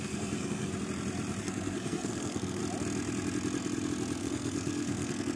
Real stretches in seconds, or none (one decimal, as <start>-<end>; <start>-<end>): 0.7-1.4; 2.6-4.2